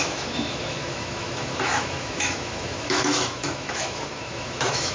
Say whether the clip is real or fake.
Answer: fake